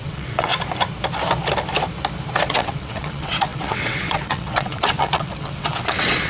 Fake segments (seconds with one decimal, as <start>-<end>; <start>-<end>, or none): 0.0-0.5; 2.5-6.3